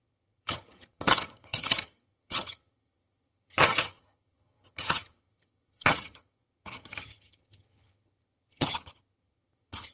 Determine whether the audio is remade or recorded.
remade